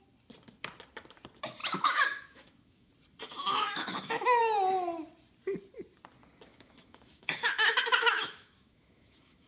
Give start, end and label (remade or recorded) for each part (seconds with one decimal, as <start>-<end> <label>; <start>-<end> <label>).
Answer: 0.0-1.6 recorded; 1.6-2.9 remade; 2.9-3.4 recorded; 3.4-4.4 remade; 4.4-6.5 recorded; 6.5-9.5 remade